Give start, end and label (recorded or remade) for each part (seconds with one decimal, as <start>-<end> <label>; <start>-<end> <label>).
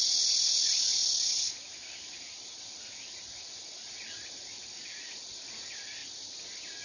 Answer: 0.0-6.8 recorded